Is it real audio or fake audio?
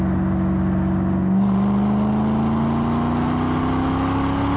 real